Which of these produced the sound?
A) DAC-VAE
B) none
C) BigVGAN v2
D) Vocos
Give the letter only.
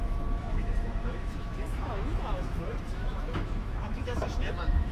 A